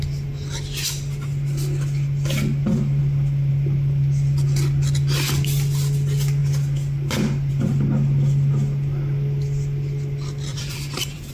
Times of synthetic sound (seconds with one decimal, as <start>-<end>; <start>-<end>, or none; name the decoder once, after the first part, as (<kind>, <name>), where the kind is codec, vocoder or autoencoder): 10.5-11.3 (vocoder, BigVGAN v2)